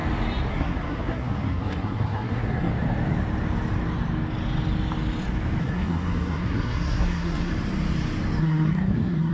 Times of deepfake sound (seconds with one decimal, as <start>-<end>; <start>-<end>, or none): 0.5-2.7; 5.6-7.5; 8.4-9.3